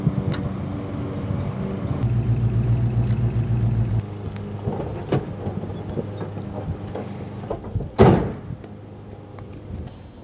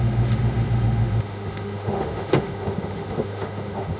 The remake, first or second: second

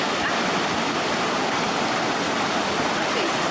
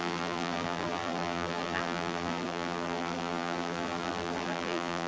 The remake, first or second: second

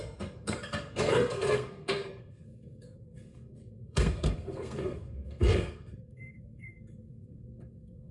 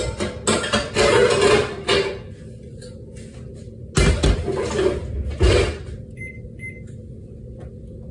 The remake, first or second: first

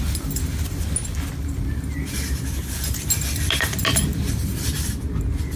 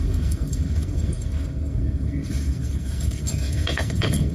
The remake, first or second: second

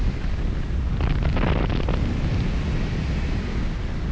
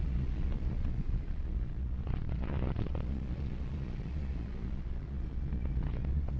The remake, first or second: second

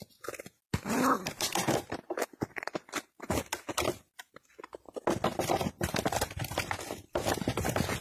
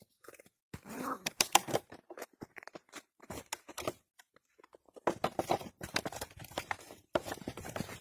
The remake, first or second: second